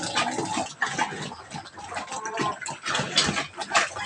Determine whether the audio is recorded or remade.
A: recorded